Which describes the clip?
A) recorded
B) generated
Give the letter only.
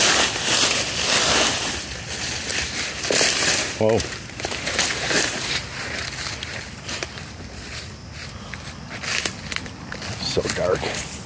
A